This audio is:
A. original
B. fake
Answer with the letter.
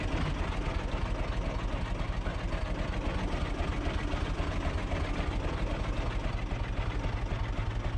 A